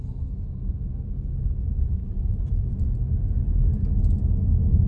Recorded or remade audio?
recorded